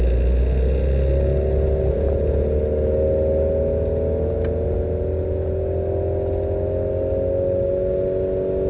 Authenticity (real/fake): real